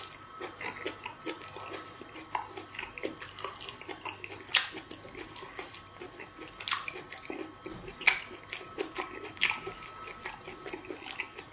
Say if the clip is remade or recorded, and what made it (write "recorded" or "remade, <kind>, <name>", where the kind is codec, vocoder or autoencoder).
recorded